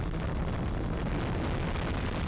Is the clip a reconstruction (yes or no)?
no